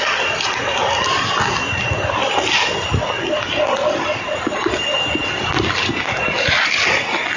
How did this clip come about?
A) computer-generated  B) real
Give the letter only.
B